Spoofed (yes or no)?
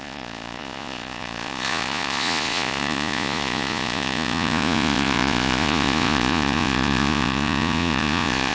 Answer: yes